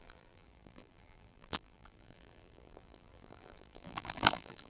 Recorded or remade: remade